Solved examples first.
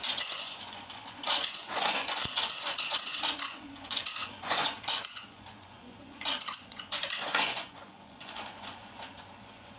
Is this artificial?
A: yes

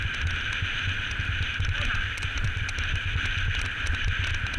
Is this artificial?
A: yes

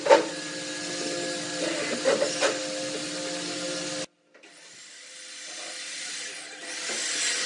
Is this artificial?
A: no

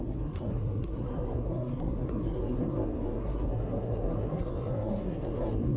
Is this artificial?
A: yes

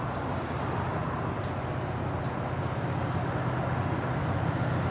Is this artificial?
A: no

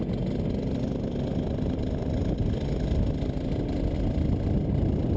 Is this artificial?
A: no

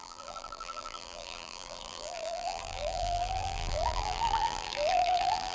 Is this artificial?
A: yes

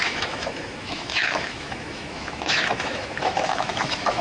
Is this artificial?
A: yes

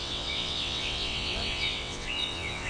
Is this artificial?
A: yes